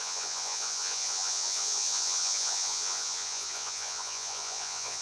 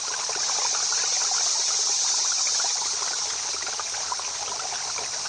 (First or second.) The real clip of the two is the second